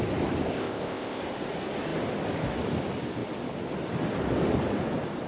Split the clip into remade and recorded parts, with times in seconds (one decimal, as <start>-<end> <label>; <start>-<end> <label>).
0.0-0.5 recorded; 0.5-1.2 remade; 1.2-5.3 recorded